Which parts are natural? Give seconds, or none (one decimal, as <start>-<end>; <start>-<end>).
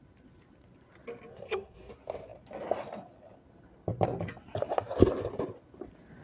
0.0-1.3; 1.9-6.2